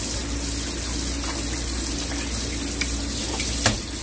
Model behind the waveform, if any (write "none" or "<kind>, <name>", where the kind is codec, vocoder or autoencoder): none